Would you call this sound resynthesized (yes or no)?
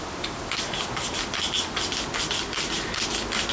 no